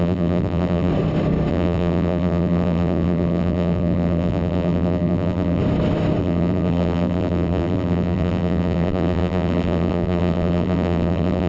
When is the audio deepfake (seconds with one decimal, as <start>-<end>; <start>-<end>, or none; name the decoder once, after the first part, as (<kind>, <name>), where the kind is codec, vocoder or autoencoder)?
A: 0.0-0.9 (vocoder, BigVGAN v2); 1.5-5.6; 6.2-11.5